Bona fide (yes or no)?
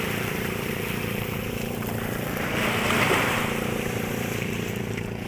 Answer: no